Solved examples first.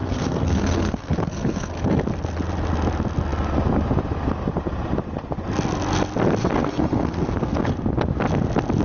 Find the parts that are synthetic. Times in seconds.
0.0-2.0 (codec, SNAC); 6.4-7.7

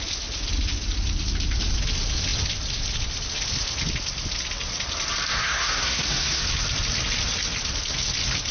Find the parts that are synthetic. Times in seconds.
5.3-6.4 (codec, SNAC)

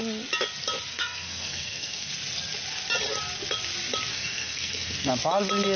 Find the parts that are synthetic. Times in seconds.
0.9-2.1 (codec, SNAC); 4.1-5.1